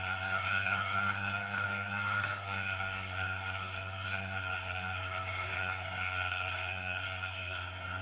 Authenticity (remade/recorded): remade